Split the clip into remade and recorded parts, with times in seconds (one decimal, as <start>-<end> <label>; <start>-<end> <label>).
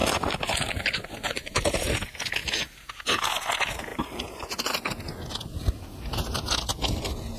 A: 0.0-1.9 remade; 1.9-3.9 recorded; 3.9-5.0 remade; 5.0-7.4 recorded